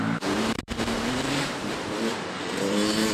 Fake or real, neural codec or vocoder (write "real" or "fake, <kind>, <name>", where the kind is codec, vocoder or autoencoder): fake, vocoder, BigVGAN v2